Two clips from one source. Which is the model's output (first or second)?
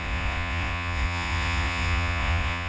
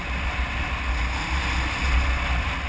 first